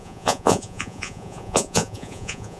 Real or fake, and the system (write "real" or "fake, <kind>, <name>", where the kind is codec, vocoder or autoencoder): fake, vocoder, Vocos